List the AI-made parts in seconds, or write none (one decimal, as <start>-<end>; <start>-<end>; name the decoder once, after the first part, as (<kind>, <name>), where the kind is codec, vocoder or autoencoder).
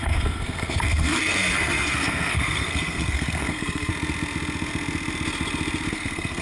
0.0-3.9 (codec, SNAC); 5.9-6.4